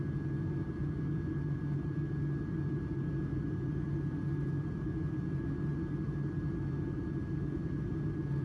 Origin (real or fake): real